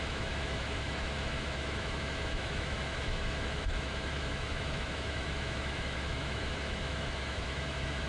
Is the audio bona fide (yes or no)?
no